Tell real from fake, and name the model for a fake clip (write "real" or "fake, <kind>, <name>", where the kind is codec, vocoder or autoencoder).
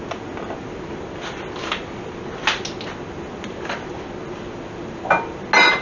real